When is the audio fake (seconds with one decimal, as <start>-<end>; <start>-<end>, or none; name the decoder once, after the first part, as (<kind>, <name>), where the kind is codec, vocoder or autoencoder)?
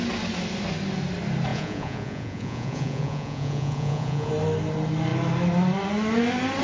1.5-4.3 (vocoder, Vocos)